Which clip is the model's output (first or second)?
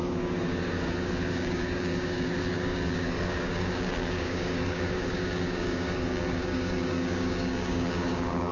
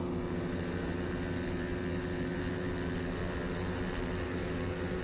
first